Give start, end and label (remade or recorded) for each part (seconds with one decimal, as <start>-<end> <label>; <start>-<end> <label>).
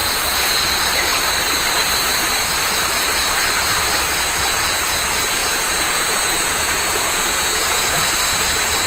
0.0-0.6 remade; 0.6-5.4 recorded; 5.4-8.1 remade; 8.1-8.9 recorded